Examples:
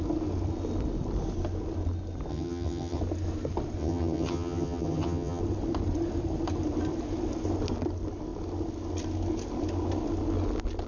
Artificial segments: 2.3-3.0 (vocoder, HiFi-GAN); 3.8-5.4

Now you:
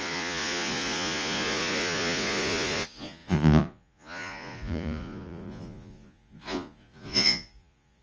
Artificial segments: 0.0-8.0 (vocoder, Vocos)

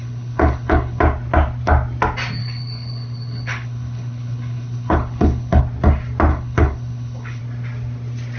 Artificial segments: 0.0-1.0 (codec, HILCodec); 2.4-5.6; 6.3-7.4

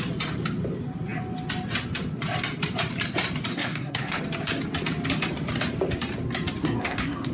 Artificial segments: 3.5-4.2 (codec, SNAC); 6.6-7.3